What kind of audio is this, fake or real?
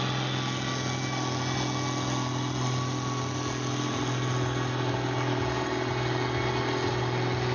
real